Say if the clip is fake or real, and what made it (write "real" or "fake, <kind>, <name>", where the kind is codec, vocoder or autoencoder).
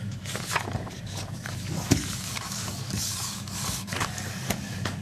fake, codec, DAC